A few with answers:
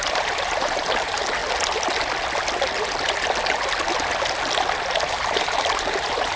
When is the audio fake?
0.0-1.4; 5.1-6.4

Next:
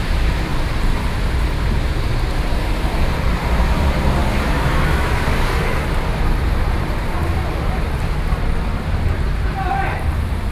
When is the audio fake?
0.0-10.5